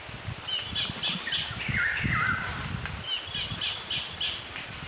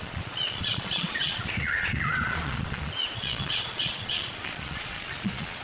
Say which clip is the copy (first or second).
second